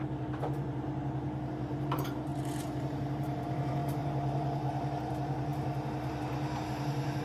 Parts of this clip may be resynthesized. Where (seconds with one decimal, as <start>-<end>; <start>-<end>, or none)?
0.0-2.3; 2.8-7.2